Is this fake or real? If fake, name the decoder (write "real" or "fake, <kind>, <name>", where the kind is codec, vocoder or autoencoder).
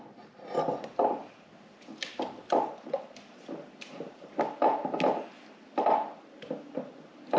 real